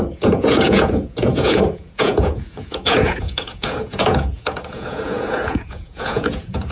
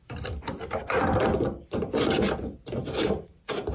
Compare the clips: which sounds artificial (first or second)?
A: first